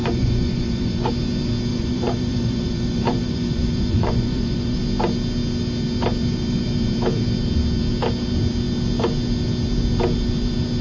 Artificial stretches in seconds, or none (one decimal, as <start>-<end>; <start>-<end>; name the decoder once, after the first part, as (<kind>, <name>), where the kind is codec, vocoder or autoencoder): 0.0-1.1 (vocoder, Vocos); 1.7-4.8